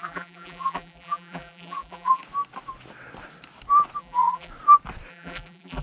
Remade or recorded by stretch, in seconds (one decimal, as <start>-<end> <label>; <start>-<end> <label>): 0.0-2.2 remade; 2.2-4.0 recorded; 4.0-4.5 remade; 4.5-5.1 recorded; 5.1-5.8 remade